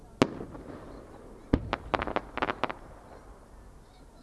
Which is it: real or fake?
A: real